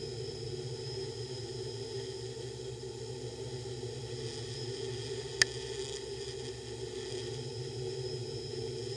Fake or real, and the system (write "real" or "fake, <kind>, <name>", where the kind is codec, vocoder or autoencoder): real